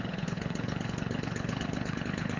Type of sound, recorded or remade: remade